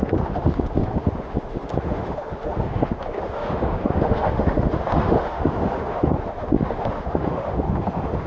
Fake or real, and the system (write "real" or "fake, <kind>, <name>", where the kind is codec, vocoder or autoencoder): fake, autoencoder, DAC-VAE